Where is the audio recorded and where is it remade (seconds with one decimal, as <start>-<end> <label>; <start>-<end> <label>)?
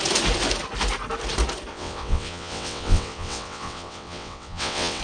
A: 0.0-1.7 recorded; 1.7-5.0 remade